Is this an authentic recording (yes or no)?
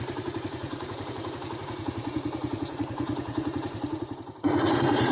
no